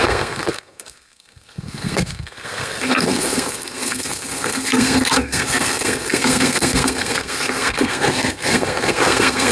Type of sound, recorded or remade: remade